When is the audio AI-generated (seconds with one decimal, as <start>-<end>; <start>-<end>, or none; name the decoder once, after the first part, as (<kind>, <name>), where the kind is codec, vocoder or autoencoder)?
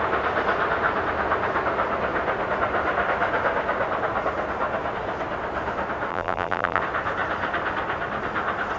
6.1-6.8 (vocoder, BigVGAN v2)